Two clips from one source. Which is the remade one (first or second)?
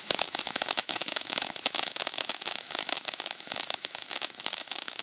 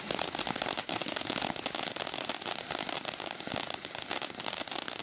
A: first